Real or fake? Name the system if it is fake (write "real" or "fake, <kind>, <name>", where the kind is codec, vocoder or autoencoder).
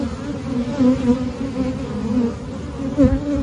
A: real